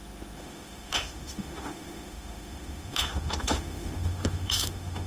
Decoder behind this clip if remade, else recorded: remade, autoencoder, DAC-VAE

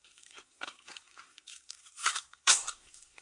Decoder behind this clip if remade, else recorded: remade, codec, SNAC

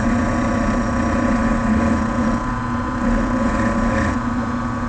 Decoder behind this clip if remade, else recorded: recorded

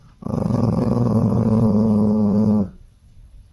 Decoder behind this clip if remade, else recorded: remade, vocoder, WaveNeXt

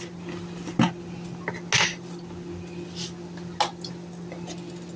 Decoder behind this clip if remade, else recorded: recorded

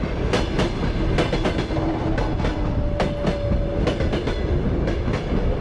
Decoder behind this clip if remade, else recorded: recorded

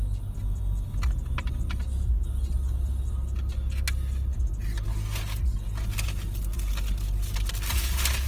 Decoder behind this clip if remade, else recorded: recorded